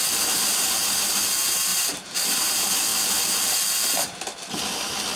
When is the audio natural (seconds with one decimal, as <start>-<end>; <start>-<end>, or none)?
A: 0.0-1.7; 2.5-5.2